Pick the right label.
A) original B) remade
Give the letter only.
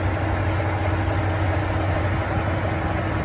A